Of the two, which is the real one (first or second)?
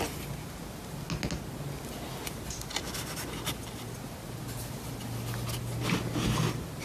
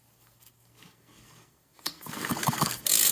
first